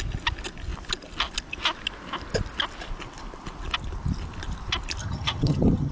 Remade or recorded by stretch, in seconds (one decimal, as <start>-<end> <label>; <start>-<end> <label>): 0.0-5.0 recorded; 5.0-5.9 remade